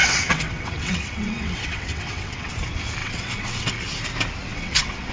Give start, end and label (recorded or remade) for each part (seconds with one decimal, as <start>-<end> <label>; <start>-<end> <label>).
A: 0.0-2.5 remade; 2.5-3.0 recorded; 3.0-3.7 remade; 3.7-4.5 recorded; 4.5-5.1 remade